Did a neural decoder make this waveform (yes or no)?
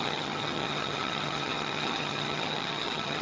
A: yes